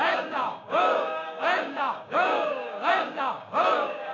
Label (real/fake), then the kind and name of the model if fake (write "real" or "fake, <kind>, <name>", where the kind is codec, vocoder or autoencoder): fake, codec, DAC